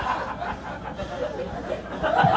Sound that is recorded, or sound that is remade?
recorded